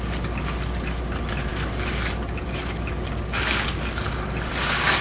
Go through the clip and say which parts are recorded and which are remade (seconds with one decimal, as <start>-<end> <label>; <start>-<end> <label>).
0.0-5.0 recorded